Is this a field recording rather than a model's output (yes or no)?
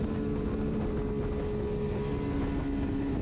yes